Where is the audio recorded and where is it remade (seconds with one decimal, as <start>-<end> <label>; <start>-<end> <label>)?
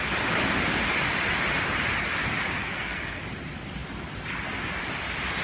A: 0.0-2.6 recorded; 2.6-3.2 remade; 3.2-5.4 recorded